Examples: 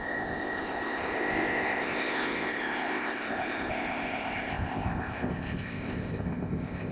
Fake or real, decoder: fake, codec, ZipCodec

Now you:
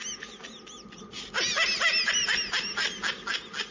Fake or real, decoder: real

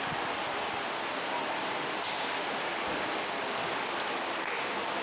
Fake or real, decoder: real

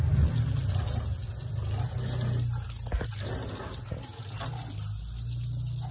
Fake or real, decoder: real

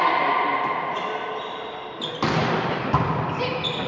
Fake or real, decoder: real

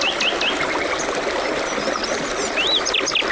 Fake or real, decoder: real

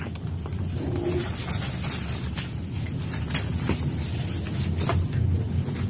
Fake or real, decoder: real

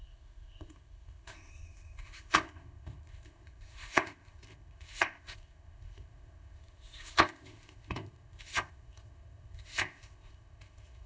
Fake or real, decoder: fake, codec, ZipCodec